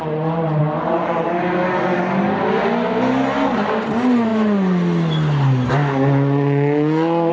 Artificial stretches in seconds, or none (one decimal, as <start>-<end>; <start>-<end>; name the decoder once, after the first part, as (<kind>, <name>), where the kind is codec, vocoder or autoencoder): none

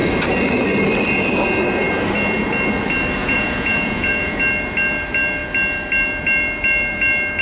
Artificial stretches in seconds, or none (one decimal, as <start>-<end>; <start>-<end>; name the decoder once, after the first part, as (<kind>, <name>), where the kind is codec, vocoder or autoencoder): 3.2-4.4 (vocoder, Vocos)

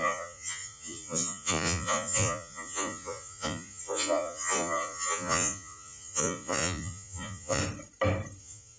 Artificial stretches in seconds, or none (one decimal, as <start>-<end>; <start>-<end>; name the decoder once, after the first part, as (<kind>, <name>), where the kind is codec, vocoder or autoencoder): 0.0-7.6 (vocoder, Vocos); 8.4-8.8

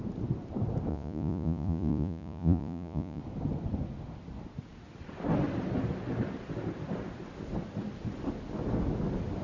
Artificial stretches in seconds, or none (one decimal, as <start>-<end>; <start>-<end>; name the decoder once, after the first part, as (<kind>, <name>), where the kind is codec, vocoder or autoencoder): 0.9-3.2 (vocoder, Vocos)

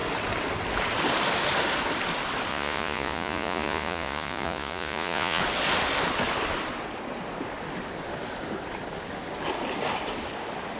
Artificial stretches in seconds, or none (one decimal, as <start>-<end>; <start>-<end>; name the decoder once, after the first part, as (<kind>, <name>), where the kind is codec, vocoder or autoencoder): 2.5-5.4 (vocoder, Vocos)

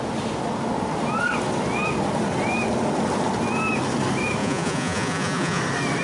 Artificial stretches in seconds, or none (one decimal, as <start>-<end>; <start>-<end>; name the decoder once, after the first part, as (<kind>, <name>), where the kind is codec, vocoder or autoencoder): 4.4-5.6 (vocoder, Vocos)

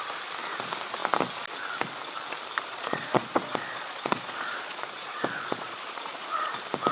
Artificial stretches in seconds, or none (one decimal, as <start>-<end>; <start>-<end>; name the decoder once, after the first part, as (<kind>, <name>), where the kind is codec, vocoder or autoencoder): 2.7-6.5 (vocoder, Vocos)